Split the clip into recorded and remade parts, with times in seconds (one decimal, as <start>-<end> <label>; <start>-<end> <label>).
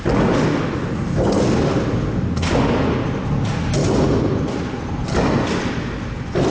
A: 0.0-6.5 recorded